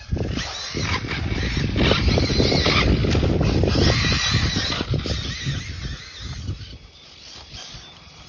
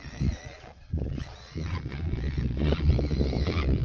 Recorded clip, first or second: first